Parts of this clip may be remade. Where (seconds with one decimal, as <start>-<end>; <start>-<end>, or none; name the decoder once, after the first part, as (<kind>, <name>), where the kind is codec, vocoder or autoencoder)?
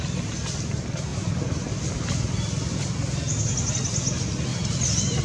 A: 4.5-5.2 (vocoder, BigVGAN v2)